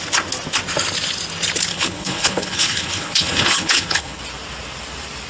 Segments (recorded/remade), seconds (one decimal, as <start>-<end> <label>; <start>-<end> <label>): 0.0-1.7 recorded; 1.7-4.2 remade; 4.2-5.3 recorded